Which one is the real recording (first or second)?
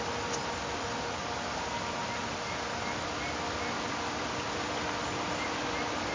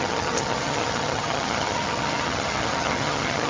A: first